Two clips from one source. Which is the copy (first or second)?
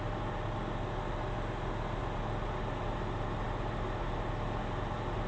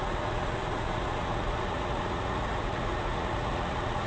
second